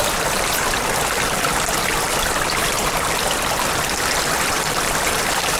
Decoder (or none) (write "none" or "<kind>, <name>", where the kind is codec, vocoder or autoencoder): vocoder, BigVGAN v2